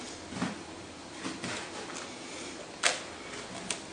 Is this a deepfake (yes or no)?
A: no